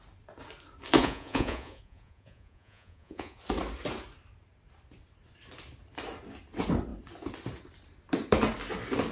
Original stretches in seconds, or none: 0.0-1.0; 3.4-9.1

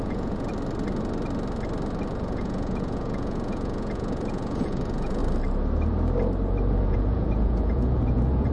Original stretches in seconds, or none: 0.5-2.1; 5.2-6.8

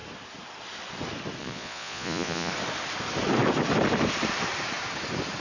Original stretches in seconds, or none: 0.0-1.4; 2.5-5.4

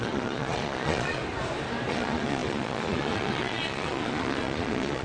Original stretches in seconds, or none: 1.2-1.9

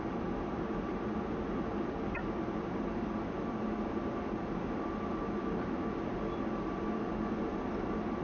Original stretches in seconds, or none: 0.0-8.2

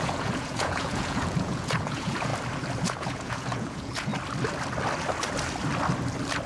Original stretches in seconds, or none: 2.3-2.8; 4.1-6.5